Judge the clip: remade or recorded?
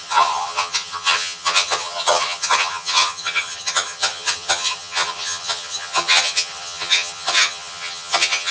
remade